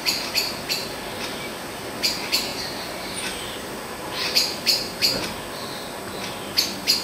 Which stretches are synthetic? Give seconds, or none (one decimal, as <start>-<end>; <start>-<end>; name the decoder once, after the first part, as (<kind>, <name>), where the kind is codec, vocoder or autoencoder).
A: 2.5-5.2 (vocoder, BigVGAN v2)